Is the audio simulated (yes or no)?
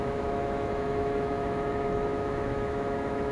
yes